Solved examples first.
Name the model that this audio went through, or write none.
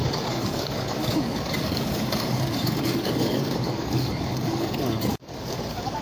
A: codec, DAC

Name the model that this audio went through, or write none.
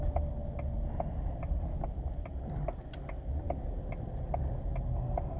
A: none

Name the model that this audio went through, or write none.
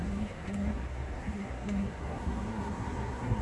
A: codec, SNAC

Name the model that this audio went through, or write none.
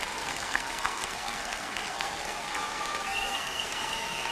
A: codec, SNAC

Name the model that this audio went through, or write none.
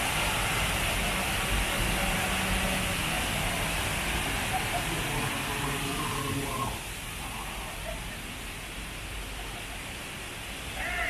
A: none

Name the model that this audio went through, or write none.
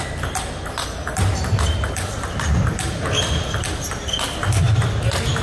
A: none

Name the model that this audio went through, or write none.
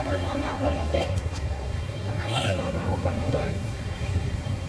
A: codec, SNAC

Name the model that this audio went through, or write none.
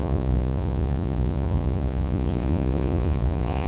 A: vocoder, Vocos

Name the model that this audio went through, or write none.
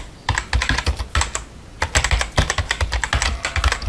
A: none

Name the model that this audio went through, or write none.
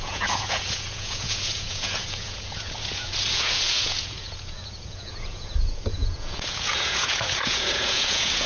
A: vocoder, Vocos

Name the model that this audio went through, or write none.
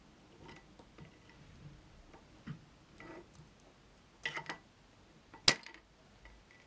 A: none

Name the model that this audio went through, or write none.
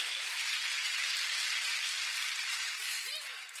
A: vocoder, BigVGAN v2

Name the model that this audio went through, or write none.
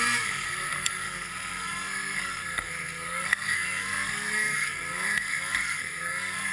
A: codec, SNAC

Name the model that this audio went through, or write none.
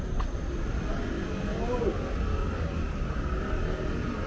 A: none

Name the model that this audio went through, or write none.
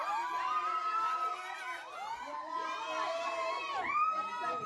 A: none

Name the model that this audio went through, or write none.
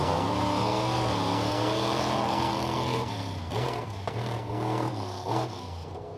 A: codec, SNAC